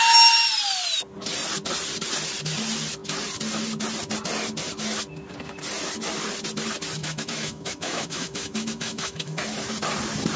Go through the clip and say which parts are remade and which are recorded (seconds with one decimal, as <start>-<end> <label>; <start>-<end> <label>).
0.0-7.0 recorded; 7.0-9.4 remade; 9.4-10.4 recorded